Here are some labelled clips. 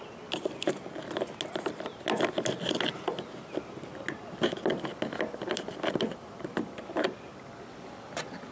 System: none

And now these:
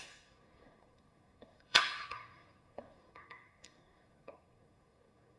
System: codec, SNAC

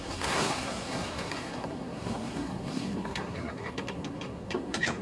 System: codec, SNAC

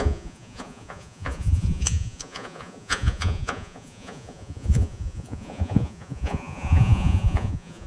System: vocoder, Vocos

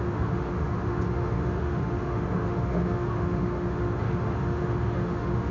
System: autoencoder, DAC-VAE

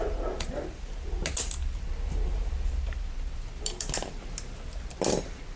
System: none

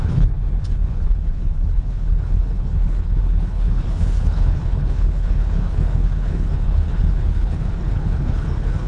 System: codec, HILCodec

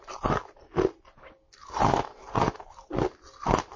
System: none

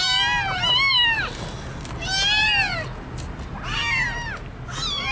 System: none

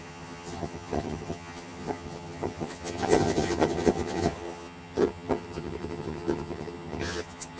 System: vocoder, HiFi-GAN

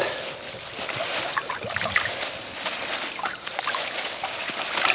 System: none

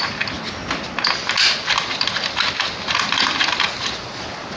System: none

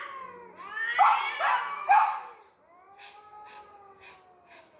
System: none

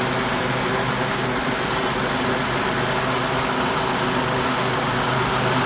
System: none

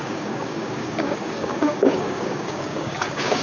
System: codec, DAC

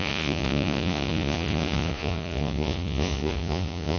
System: vocoder, Vocos